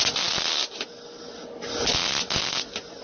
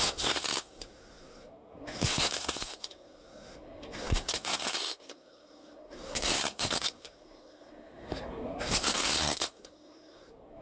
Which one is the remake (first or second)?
second